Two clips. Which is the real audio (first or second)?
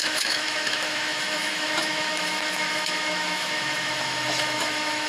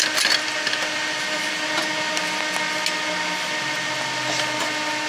second